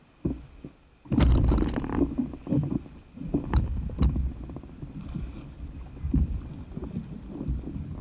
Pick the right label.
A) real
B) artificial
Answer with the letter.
A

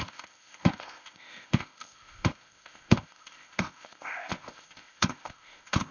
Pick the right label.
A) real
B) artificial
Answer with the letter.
B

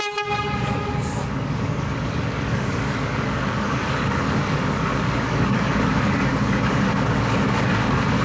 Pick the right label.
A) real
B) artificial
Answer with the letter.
B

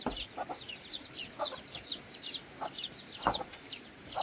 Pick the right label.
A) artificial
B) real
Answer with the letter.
B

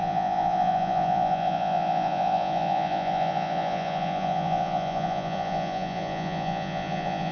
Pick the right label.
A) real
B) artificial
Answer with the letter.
B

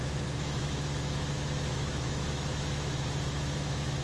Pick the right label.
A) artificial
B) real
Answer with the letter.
A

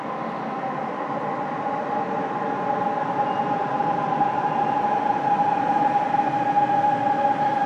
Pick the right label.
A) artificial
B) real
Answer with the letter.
B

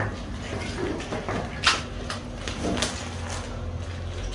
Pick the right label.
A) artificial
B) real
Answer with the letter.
B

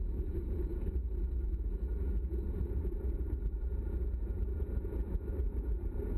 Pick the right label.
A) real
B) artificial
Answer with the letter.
B